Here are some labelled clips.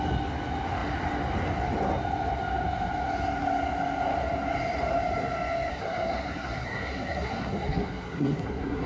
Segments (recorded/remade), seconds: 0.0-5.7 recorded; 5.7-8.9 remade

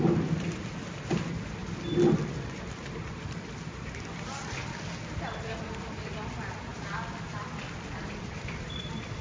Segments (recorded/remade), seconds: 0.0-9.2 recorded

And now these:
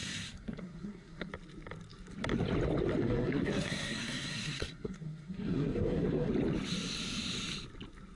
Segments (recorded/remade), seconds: 0.0-1.3 remade; 1.3-3.0 recorded; 3.0-6.3 remade; 6.3-8.2 recorded